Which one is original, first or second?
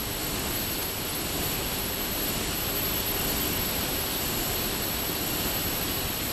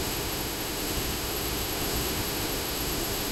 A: first